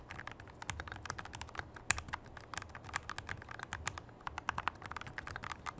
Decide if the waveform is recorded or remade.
recorded